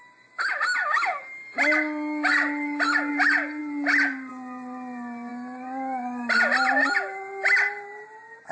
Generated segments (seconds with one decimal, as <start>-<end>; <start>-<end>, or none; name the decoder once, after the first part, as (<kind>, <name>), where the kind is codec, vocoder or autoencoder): none

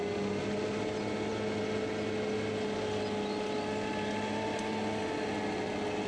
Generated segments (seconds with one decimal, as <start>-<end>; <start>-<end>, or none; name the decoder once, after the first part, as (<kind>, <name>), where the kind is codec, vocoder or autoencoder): none

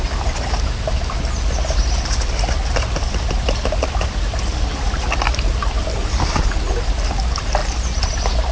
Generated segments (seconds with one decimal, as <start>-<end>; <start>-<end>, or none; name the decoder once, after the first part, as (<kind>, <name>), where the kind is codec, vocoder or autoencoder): none

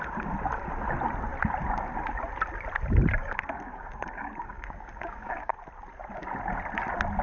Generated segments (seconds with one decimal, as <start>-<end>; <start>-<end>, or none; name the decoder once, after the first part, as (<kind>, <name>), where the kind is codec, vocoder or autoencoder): 3.2-5.5 (codec, DAC)

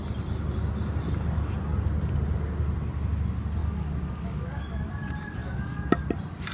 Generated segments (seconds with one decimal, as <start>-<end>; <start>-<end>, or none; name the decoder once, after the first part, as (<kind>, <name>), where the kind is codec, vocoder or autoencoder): 3.6-4.9 (codec, DAC); 5.4-6.0

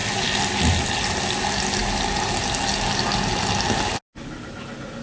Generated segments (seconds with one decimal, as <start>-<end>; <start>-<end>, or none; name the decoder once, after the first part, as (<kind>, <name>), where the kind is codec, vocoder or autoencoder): none